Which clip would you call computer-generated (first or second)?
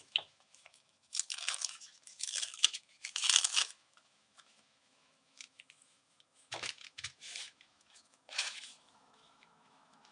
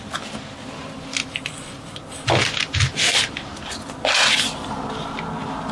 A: first